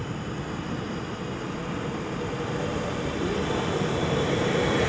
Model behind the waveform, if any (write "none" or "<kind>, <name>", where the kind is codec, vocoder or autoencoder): none